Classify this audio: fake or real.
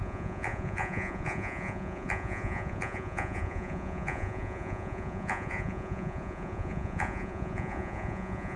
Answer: fake